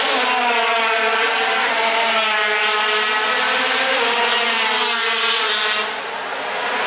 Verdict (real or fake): real